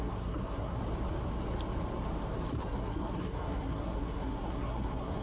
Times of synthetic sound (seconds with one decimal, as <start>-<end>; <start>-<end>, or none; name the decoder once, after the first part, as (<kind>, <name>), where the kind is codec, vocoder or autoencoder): 0.0-0.8 (codec, SNAC); 2.6-5.2